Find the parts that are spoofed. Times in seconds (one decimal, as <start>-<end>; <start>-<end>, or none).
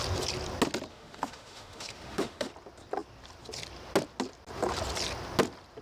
0.9-2.5